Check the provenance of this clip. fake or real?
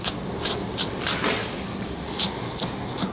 real